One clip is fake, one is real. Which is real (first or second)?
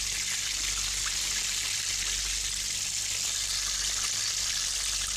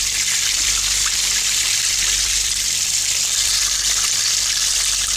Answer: first